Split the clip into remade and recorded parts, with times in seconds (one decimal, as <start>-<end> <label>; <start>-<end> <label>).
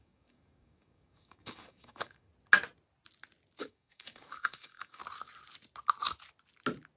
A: 0.0-2.3 remade; 2.3-3.6 recorded; 3.6-5.0 remade; 5.0-7.0 recorded